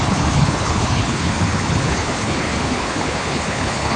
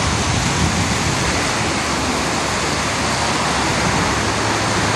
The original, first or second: second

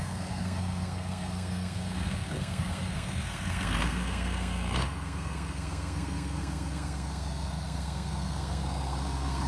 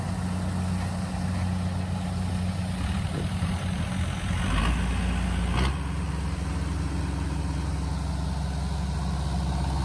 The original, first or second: second